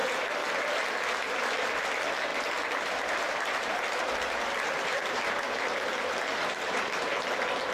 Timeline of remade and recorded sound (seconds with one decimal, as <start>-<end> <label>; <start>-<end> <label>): 0.0-0.5 remade; 0.5-2.3 recorded; 2.3-6.9 remade; 6.9-7.7 recorded